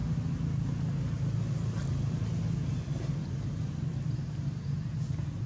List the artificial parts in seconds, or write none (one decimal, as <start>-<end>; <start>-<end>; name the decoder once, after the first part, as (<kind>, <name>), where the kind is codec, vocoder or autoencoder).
none